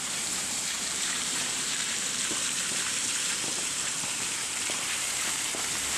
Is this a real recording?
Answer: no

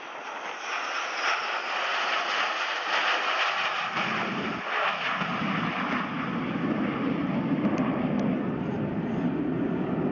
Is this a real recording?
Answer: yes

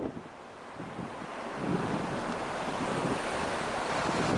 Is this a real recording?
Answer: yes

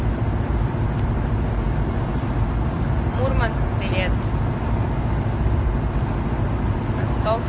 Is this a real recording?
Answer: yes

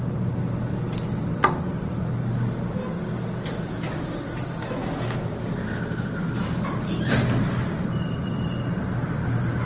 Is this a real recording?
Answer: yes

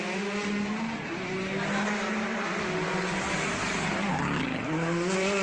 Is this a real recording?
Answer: yes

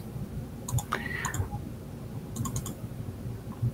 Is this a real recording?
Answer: yes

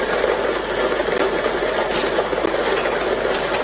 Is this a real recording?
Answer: yes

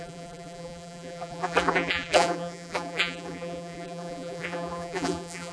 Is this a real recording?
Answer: no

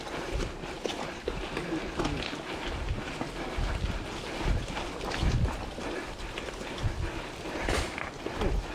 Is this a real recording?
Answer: yes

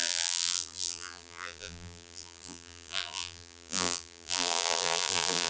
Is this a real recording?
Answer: no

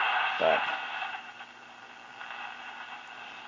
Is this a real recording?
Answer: yes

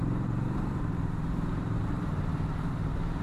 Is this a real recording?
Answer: no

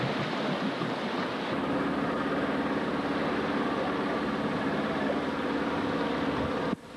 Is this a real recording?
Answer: yes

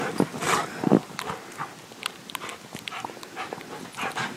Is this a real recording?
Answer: yes